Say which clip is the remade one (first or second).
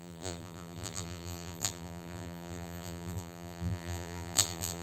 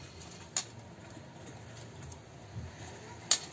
first